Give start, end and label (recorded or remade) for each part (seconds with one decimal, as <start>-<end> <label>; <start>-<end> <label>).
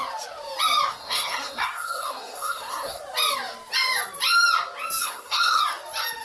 0.0-0.9 recorded; 0.9-3.0 remade; 3.0-5.0 recorded; 5.0-5.6 remade; 5.6-6.2 recorded